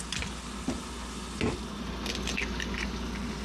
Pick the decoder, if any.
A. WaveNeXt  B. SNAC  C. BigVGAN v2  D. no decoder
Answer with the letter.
D